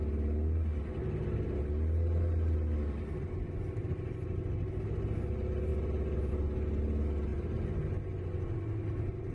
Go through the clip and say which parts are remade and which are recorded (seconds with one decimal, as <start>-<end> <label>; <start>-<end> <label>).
0.0-9.3 recorded